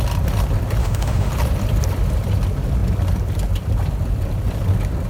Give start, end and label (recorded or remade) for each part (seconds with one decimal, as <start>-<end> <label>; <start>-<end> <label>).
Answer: 0.0-0.8 recorded; 0.8-1.3 remade; 1.3-5.1 recorded